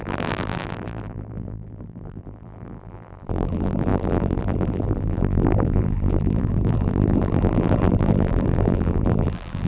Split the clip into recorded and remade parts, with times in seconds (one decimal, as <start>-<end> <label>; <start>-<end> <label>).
0.0-9.7 remade